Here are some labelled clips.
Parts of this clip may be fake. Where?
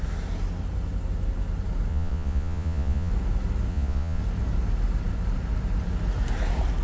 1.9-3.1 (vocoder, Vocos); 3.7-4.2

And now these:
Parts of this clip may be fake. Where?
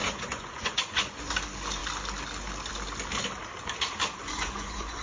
0.0-1.3 (vocoder, Vocos); 4.2-5.0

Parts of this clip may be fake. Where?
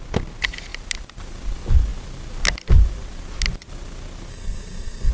4.3-5.1 (codec, SNAC)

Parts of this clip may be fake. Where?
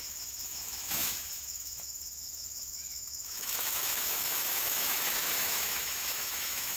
0.0-6.8 (autoencoder, DAC-VAE)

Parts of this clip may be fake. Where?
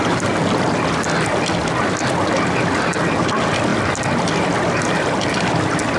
none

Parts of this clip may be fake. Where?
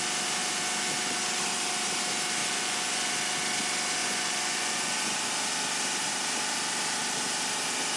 2.4-3.1 (vocoder, Vocos); 4.0-5.3